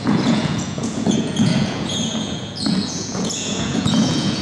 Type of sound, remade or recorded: remade